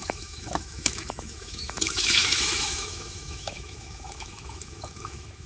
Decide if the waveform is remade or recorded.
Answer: remade